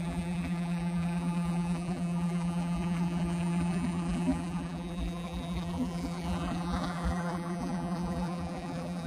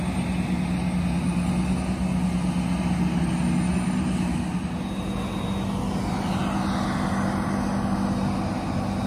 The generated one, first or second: first